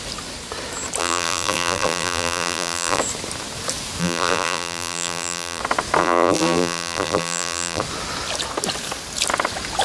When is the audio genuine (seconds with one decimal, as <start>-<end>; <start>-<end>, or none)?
0.0-1.0; 3.0-4.0; 5.6-6.0; 7.8-9.8